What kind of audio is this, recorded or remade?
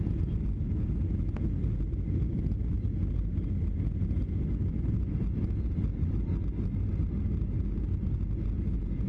recorded